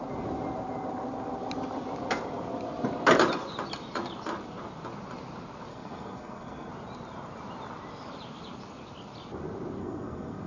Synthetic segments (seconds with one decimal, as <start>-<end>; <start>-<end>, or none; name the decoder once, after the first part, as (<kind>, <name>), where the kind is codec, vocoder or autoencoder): 5.7-6.7 (codec, SNAC); 9.8-10.5